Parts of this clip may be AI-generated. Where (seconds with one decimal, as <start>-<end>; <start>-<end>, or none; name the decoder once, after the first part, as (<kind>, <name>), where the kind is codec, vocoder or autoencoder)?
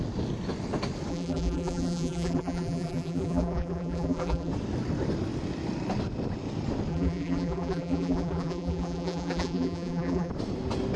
1.1-4.5 (vocoder, BigVGAN v2); 6.9-10.3